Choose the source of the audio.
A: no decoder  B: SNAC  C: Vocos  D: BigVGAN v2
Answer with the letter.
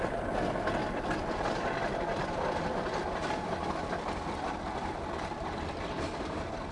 A